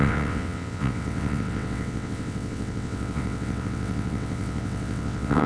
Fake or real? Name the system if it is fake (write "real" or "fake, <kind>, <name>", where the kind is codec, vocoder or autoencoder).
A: fake, vocoder, WaveNeXt